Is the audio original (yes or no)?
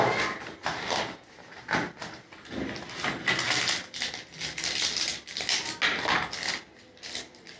yes